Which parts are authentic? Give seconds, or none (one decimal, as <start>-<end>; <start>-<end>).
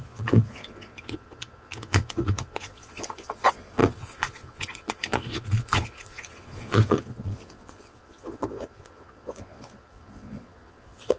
none